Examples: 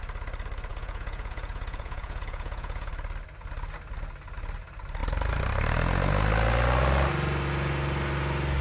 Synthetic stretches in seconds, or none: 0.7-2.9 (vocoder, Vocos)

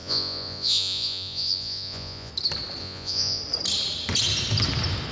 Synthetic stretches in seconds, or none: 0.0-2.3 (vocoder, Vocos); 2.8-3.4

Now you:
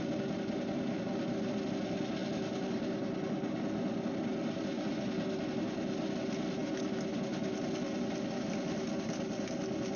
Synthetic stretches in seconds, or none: none